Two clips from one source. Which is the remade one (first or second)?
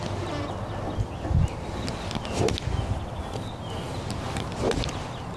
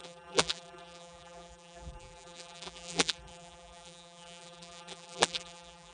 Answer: second